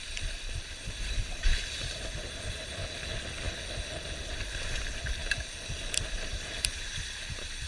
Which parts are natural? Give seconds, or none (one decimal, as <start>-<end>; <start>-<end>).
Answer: 2.8-4.2; 5.2-6.0